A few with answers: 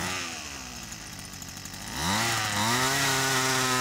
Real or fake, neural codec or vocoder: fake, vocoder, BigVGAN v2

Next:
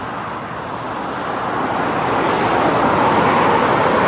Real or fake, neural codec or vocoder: real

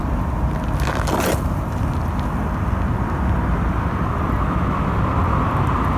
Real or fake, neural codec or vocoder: real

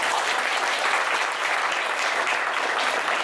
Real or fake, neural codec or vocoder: real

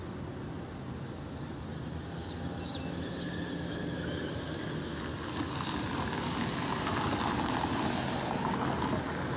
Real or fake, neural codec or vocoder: real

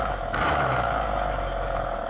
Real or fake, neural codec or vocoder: fake, autoencoder, DAC-VAE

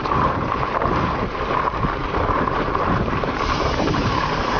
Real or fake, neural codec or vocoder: fake, vocoder, BigVGAN v2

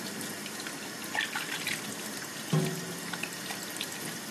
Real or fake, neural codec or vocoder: real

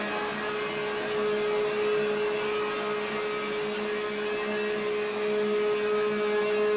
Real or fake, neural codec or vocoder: real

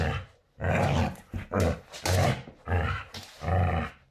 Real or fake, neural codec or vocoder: real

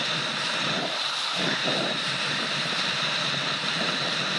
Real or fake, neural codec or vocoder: fake, vocoder, BigVGAN v2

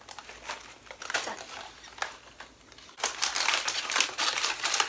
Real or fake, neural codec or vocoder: real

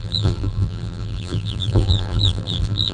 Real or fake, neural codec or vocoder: fake, vocoder, BigVGAN v2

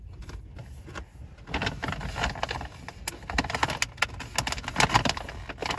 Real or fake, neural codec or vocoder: real